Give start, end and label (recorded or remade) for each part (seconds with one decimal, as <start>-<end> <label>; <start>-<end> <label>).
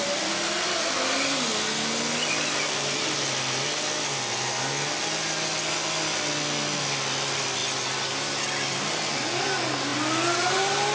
0.0-10.9 recorded